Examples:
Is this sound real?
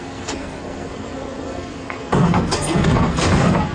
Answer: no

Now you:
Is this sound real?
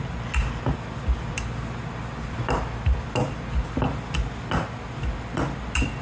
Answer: yes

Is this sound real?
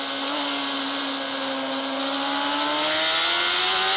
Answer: yes